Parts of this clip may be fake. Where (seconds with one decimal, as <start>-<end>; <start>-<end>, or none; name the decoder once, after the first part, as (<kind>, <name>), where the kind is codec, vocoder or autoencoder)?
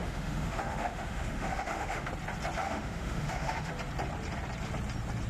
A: 0.0-2.1 (autoencoder, DAC-VAE); 2.6-3.7